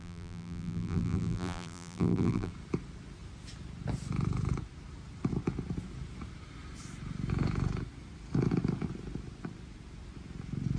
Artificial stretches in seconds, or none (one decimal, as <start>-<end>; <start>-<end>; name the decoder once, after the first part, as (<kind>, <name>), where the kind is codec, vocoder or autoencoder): 0.0-2.5 (vocoder, BigVGAN v2)